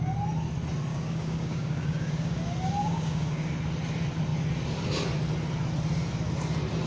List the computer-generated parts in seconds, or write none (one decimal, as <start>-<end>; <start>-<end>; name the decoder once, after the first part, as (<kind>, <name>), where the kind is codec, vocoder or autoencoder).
0.9-2.4 (codec, DAC); 2.8-3.5

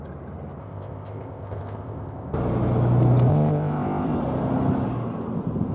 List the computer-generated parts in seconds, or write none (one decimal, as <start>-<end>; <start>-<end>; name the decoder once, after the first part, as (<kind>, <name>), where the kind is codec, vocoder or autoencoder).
0.6-2.3 (codec, ZipCodec); 3.3-4.2

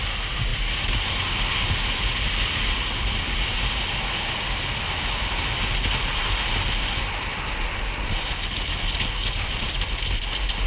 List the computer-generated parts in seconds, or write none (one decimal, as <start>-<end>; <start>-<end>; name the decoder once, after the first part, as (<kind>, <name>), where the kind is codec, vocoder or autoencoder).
none

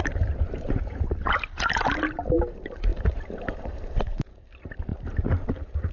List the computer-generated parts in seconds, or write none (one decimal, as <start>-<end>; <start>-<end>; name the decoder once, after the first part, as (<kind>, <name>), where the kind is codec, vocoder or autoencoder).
0.0-5.9 (vocoder, BigVGAN v2)

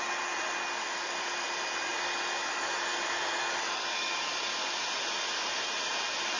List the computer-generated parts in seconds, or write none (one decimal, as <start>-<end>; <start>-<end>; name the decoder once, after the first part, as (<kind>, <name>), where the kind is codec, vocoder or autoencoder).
none